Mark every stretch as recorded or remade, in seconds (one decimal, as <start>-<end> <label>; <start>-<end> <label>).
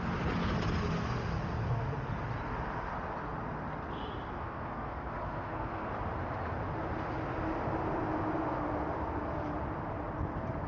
0.0-4.4 recorded; 4.4-5.9 remade; 5.9-10.7 recorded